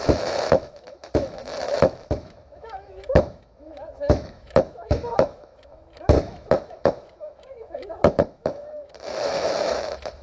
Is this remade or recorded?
remade